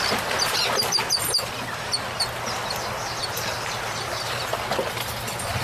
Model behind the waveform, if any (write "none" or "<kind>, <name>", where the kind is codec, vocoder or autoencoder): none